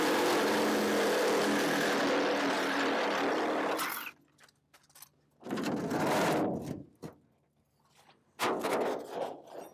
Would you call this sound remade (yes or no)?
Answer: no